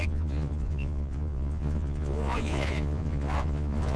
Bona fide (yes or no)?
no